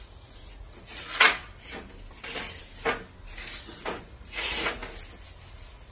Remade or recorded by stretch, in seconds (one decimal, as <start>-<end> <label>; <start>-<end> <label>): 0.0-1.5 remade; 1.5-3.6 recorded; 3.6-4.8 remade; 4.8-5.5 recorded; 5.5-5.9 remade